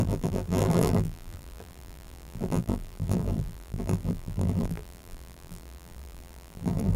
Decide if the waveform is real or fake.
fake